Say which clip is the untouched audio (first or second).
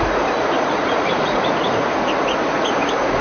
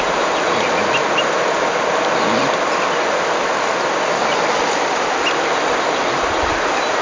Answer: second